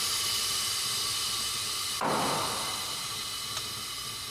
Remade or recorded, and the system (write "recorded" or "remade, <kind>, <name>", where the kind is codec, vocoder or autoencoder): recorded